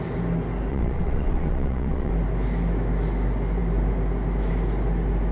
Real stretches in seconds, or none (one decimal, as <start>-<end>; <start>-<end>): 0.0-0.7; 2.1-5.3